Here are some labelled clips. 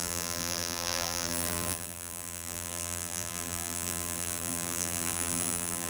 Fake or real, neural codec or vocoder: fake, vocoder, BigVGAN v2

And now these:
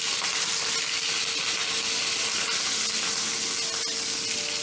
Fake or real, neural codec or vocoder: real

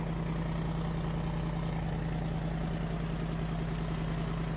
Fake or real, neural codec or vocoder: real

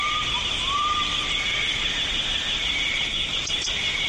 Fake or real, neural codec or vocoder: fake, vocoder, BigVGAN v2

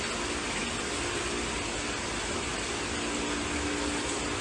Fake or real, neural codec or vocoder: real